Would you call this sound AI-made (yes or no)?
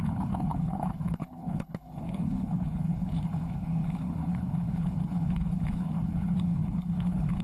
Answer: yes